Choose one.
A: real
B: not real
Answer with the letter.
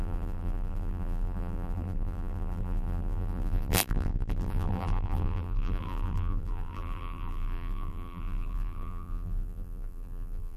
B